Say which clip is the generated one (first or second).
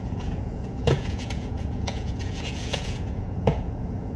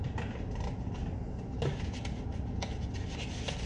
first